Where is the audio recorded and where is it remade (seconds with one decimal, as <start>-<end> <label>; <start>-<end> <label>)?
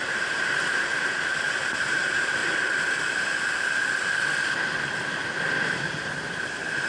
0.0-2.4 remade; 2.4-5.4 recorded; 5.4-6.9 remade